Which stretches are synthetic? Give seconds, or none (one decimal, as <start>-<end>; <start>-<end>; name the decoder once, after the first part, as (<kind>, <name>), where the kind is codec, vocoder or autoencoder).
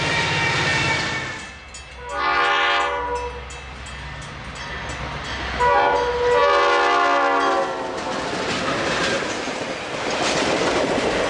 none